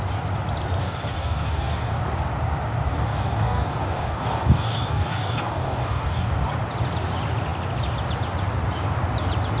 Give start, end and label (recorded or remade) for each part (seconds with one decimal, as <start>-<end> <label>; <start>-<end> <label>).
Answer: 0.0-0.8 recorded; 0.8-2.0 remade; 2.0-2.9 recorded; 2.9-6.3 remade; 6.3-9.6 recorded